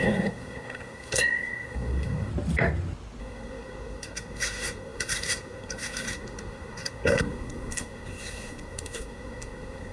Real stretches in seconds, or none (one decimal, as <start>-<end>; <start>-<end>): 2.3-3.2